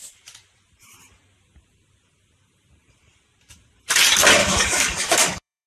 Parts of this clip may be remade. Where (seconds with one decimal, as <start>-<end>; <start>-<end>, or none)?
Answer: 4.4-5.7